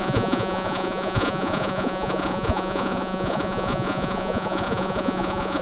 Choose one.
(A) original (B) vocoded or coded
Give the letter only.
B